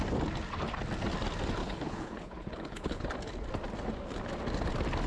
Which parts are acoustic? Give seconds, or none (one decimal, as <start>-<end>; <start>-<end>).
0.0-1.6; 3.1-5.1